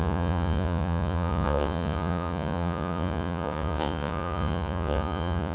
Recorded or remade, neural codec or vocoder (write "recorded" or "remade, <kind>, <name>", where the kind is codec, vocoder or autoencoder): remade, vocoder, Vocos